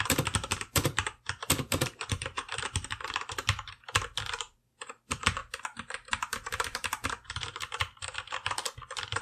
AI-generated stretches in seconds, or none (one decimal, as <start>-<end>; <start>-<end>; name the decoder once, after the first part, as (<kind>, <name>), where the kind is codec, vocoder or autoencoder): 0.0-5.4 (vocoder, BigVGAN v2); 6.1-9.2